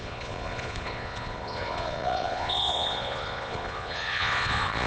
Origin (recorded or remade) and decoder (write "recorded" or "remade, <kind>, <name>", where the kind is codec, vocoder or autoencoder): remade, vocoder, Vocos